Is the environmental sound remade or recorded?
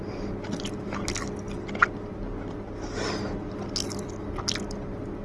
recorded